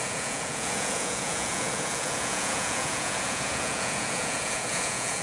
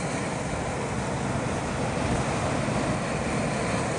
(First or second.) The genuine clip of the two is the second